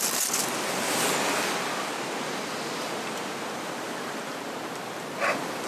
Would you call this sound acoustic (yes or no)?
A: yes